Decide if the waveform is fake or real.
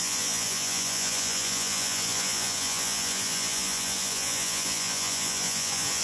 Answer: fake